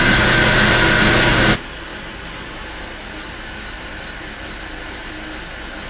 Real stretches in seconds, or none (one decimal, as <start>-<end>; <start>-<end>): 0.0-5.9